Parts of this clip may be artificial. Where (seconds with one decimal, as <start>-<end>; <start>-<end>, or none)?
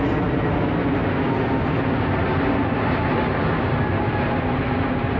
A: none